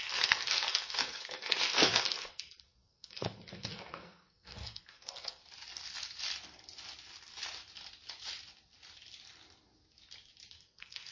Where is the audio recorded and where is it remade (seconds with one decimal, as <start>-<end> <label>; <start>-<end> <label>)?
0.0-5.4 remade; 5.4-10.5 recorded; 10.5-11.1 remade